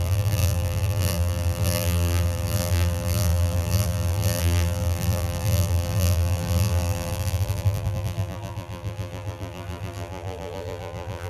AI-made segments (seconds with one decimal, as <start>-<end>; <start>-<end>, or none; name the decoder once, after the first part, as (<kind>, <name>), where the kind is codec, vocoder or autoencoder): 0.0-11.3 (vocoder, BigVGAN v2)